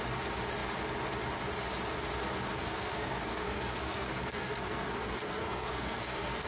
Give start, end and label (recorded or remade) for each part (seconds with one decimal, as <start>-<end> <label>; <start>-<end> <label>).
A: 0.0-2.5 recorded; 2.5-6.5 remade